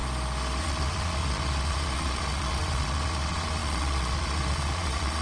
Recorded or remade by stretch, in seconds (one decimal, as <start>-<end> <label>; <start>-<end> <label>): 0.0-0.6 recorded; 0.6-5.2 remade